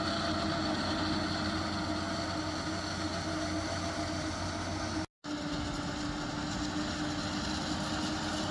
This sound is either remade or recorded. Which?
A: recorded